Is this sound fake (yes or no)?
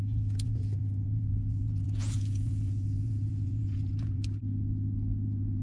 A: yes